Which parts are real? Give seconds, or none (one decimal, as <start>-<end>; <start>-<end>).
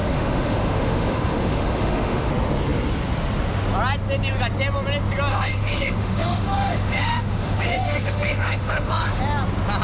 2.3-5.3; 9.2-9.8